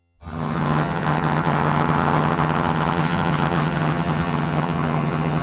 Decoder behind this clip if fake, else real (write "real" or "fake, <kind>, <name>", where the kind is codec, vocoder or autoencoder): fake, vocoder, HiFi-GAN